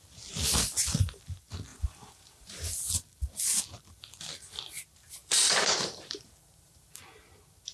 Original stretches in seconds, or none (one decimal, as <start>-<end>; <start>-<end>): 0.0-1.7; 2.6-5.2; 6.9-7.7